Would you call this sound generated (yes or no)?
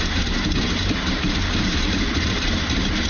yes